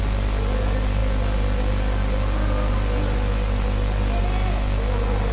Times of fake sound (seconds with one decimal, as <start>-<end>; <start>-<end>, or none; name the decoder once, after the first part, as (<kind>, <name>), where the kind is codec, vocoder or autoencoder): none